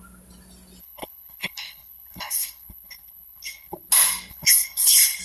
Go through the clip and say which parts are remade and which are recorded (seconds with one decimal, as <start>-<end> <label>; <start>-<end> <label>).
0.0-0.8 recorded; 0.8-3.9 remade; 3.9-4.3 recorded; 4.3-5.2 remade